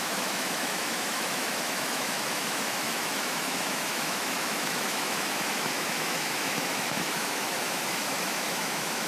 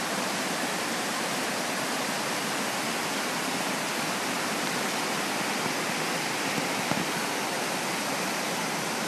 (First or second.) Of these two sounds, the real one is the second